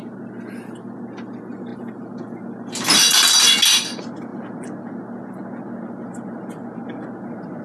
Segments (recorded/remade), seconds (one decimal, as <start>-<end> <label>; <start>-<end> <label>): 0.0-7.6 recorded